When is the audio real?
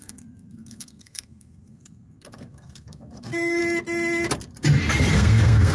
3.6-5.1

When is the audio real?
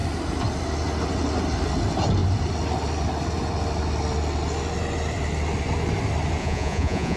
0.0-6.4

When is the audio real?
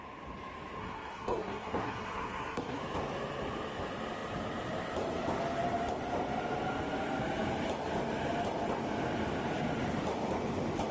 0.0-0.8; 2.8-10.9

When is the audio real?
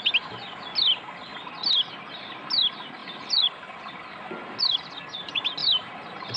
0.0-3.0; 3.9-5.6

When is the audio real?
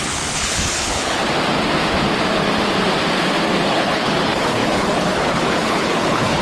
1.2-3.7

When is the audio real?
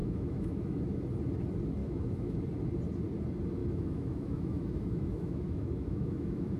0.8-1.8; 2.4-3.6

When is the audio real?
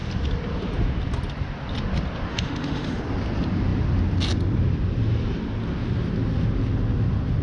0.0-2.3; 3.0-7.4